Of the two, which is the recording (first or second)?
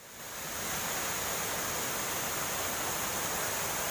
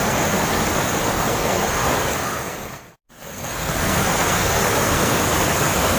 first